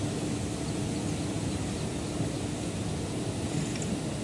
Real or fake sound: real